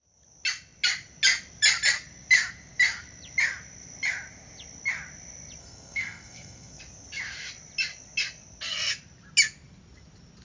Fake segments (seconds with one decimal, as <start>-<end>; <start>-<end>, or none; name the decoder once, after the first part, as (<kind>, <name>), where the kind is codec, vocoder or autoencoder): 5.6-6.8 (codec, SNAC)